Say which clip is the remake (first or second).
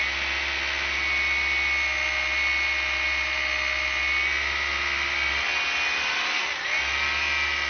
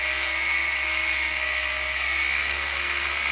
second